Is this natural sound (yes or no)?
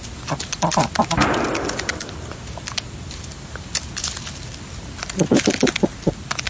yes